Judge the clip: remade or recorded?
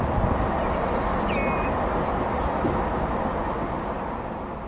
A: recorded